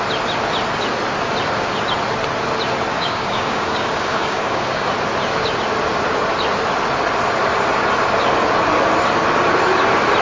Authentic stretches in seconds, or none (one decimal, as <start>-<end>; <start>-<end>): 0.0-2.9; 4.9-10.2